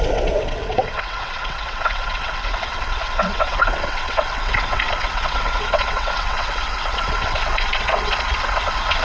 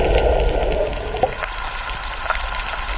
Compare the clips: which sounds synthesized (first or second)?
first